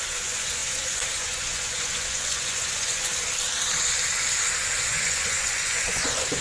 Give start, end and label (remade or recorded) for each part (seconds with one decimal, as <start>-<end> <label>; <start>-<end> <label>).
0.0-3.1 remade; 3.1-4.6 recorded; 4.6-6.4 remade